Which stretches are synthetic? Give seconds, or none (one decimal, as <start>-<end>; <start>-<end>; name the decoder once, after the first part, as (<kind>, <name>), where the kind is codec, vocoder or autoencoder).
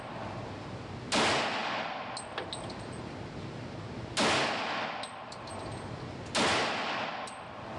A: none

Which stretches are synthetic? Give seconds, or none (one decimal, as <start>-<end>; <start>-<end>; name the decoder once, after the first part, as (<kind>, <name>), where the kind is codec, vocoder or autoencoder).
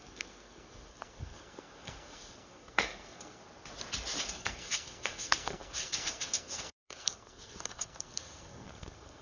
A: 0.0-3.4 (codec, SNAC); 4.2-9.2